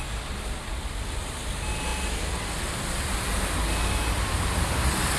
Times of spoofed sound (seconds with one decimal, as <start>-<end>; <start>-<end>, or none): none